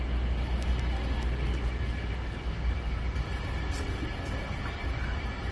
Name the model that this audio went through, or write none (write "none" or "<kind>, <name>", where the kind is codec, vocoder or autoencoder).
none